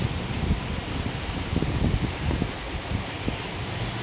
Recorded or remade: recorded